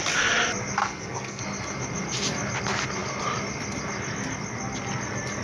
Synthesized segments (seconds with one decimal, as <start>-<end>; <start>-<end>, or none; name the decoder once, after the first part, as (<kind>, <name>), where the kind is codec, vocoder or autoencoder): 0.8-1.4 (codec, SNAC)